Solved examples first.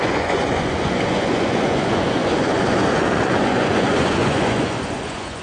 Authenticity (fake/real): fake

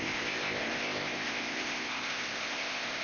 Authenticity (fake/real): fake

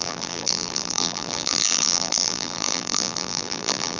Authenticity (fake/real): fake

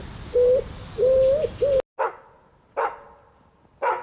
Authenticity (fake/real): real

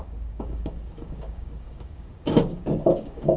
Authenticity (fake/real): fake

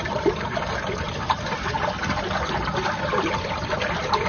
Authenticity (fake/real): real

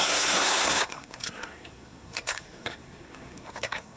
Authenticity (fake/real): fake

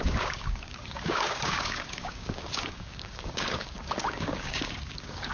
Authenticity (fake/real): fake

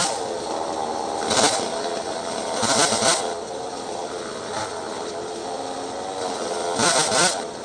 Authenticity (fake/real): real